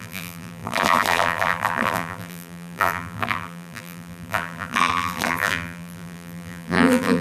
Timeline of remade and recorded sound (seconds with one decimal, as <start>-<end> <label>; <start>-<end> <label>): 0.0-7.2 remade